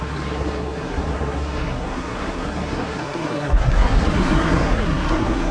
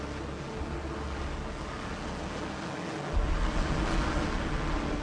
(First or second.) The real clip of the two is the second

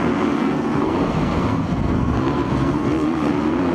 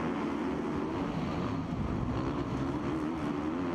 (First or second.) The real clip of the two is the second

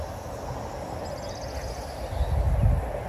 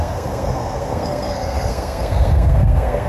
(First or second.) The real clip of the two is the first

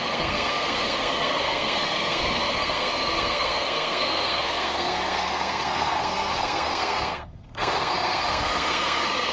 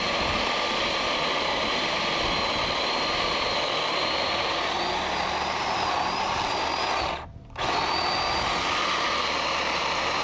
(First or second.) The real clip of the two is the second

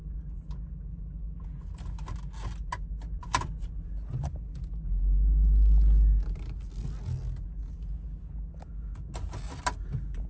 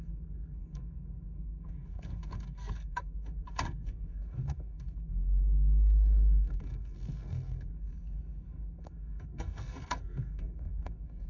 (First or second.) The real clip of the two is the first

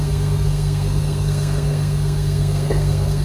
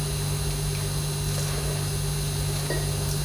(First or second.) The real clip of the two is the second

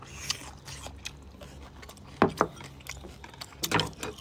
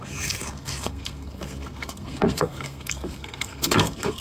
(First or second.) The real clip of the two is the first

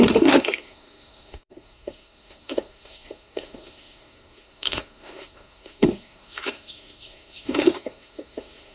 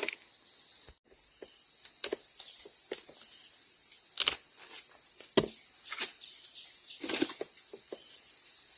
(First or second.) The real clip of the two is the second